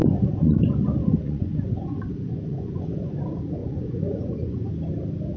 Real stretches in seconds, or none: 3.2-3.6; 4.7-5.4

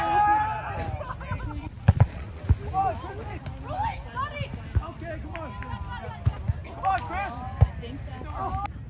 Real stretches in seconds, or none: 0.0-1.6; 2.4-8.9

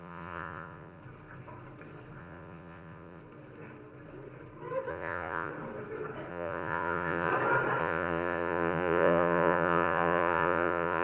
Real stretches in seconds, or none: 1.0-2.2; 3.2-4.9; 5.5-6.3; 7.3-7.8